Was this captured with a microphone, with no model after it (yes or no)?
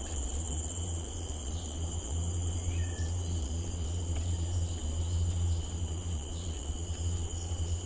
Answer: no